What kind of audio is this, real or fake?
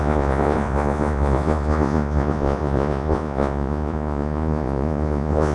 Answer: fake